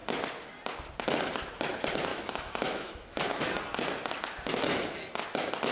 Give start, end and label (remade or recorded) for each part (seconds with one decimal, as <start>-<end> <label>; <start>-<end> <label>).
0.0-2.1 recorded; 2.1-3.4 remade; 3.4-5.7 recorded